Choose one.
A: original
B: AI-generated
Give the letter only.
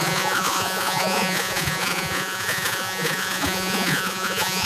B